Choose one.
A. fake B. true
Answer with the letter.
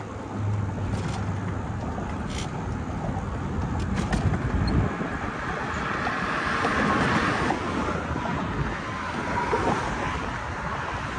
B